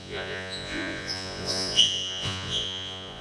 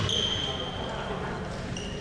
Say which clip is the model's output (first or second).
first